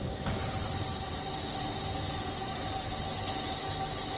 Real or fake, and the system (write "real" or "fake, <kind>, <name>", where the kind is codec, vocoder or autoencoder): real